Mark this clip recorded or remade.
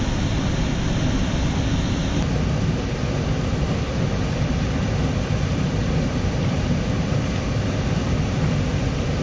recorded